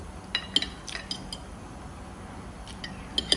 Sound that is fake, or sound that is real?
real